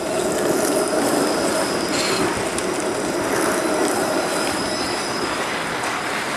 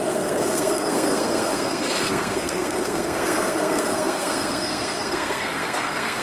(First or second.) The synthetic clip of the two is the second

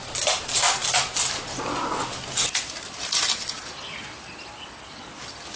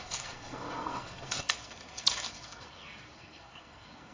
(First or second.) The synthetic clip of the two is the second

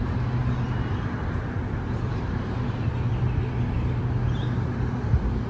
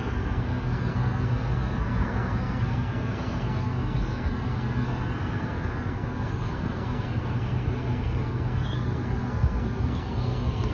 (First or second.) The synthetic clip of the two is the second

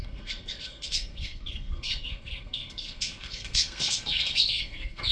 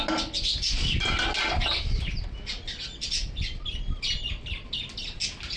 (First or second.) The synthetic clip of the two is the first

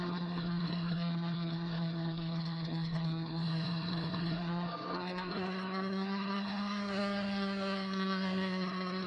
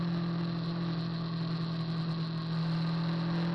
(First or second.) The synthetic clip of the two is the first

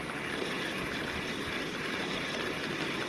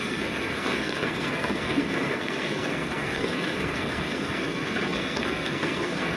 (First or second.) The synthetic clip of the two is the second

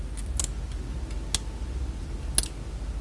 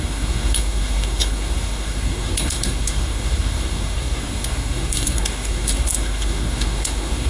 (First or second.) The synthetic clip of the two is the second